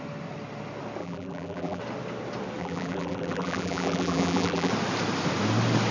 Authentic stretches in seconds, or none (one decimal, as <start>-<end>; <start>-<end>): 0.0-1.0; 1.8-2.6; 4.7-5.9